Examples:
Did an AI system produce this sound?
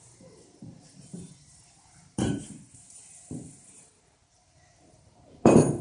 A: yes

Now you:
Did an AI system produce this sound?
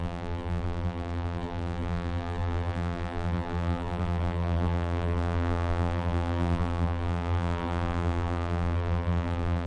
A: yes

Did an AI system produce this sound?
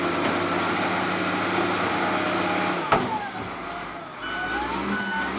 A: no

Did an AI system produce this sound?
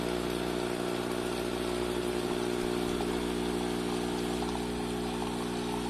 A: no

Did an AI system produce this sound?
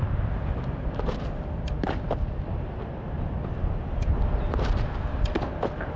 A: no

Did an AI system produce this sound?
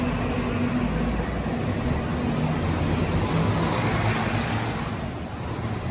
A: no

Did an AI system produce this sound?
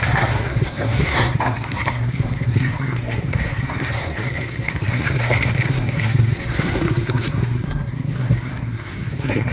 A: yes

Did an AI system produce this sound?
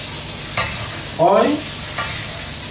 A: no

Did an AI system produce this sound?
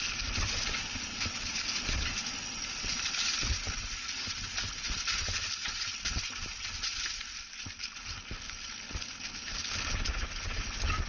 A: no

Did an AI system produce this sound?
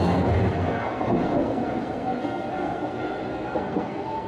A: yes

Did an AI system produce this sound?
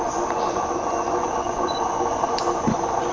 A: yes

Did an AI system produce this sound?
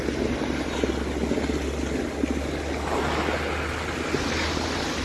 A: no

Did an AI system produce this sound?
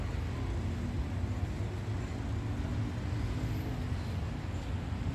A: no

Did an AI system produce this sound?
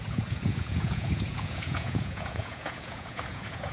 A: yes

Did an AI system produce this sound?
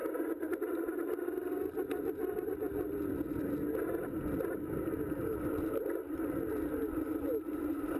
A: no